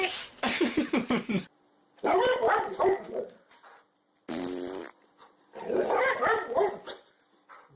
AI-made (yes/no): no